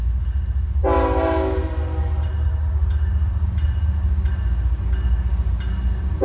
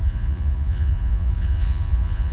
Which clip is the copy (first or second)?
second